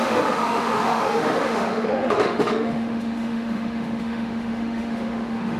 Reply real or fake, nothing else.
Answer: fake